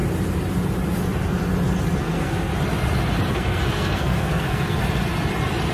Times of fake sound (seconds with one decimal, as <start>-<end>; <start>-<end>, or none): 2.0-2.5; 3.3-4.8